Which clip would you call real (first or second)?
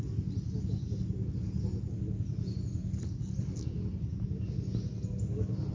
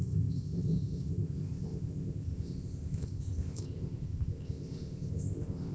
first